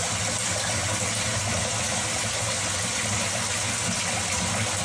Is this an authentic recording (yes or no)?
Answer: yes